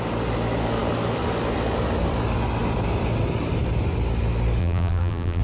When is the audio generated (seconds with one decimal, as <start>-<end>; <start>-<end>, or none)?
4.6-5.4